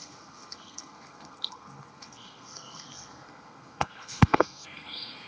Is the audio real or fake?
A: fake